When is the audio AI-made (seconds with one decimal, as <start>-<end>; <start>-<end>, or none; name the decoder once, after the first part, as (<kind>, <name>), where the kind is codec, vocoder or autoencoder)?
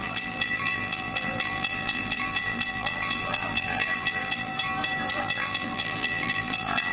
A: 0.0-4.5 (vocoder, BigVGAN v2); 5.1-6.9